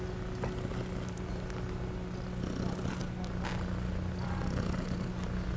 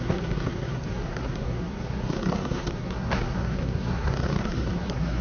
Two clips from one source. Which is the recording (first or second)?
first